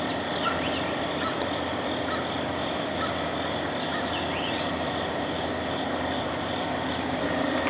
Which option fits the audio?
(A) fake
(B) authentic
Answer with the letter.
B